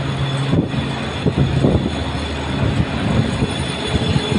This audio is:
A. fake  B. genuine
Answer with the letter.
B